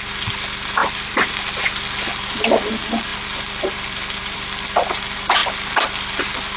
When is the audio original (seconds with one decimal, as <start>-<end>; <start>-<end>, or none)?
0.0-0.8; 1.7-3.1; 4.6-6.6